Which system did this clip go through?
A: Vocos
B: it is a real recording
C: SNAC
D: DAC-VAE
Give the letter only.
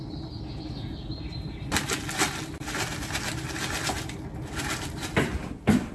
B